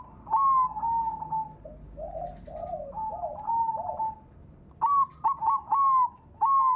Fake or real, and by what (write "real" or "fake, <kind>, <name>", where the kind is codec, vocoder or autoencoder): real